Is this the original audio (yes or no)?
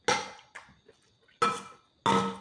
yes